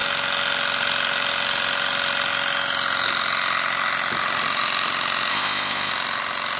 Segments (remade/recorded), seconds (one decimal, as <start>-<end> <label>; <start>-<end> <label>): 0.0-5.3 recorded; 5.3-5.9 remade; 5.9-6.6 recorded